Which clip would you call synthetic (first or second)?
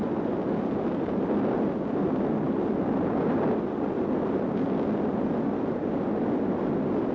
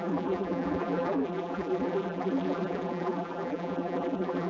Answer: second